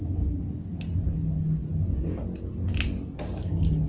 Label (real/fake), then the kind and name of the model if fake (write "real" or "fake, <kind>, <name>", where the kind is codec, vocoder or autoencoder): real